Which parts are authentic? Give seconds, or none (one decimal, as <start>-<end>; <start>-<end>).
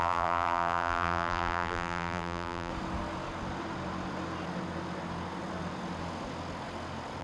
2.7-7.2